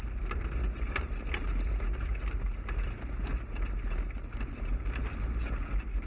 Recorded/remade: recorded